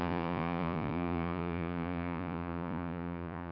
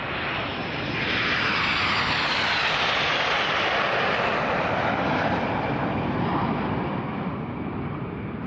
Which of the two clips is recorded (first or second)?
second